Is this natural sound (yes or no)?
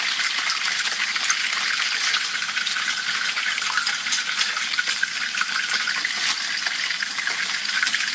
yes